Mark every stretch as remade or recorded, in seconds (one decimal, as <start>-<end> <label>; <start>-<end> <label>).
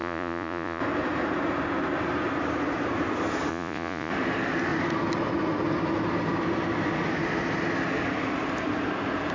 0.0-0.8 remade; 0.8-3.5 recorded; 3.5-4.1 remade; 4.1-9.3 recorded